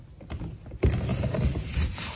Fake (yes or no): no